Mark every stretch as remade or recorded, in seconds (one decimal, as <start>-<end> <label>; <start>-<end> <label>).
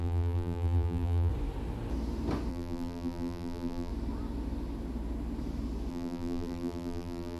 0.0-1.3 remade; 1.3-2.5 recorded; 2.5-3.9 remade; 3.9-5.9 recorded; 5.9-7.4 remade